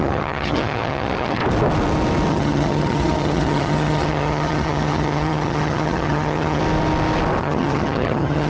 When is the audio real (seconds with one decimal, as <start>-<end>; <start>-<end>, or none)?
1.4-2.3; 6.6-7.4